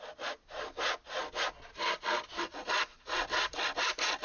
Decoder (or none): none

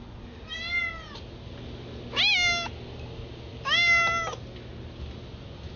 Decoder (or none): none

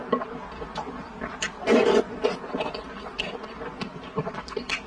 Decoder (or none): none